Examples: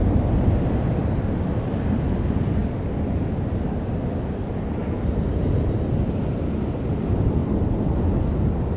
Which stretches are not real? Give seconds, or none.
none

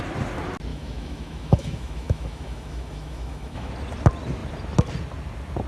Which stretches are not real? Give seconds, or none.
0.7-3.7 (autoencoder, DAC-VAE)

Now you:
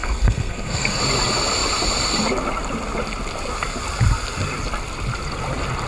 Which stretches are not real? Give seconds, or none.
0.0-1.0 (codec, SNAC)